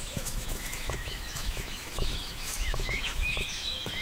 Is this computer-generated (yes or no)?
yes